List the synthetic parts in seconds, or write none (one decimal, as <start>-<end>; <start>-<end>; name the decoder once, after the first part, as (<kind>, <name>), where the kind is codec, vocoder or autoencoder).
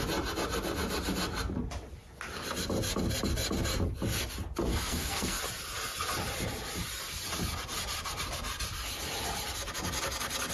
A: 4.7-5.4 (codec, SNAC)